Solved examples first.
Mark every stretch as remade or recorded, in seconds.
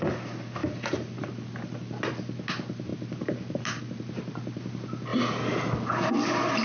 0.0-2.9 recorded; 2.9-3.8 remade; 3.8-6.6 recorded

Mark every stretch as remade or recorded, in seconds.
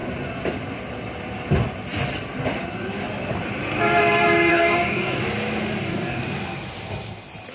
0.0-4.5 recorded; 4.5-5.2 remade; 5.2-5.8 recorded; 5.8-6.2 remade; 6.2-7.5 recorded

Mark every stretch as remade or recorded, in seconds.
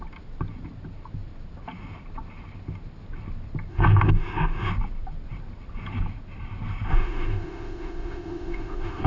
0.0-3.7 recorded; 3.7-4.7 remade; 4.7-6.9 recorded; 6.9-9.1 remade